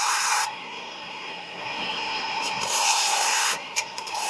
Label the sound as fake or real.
fake